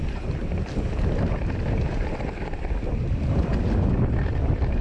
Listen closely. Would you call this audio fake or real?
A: fake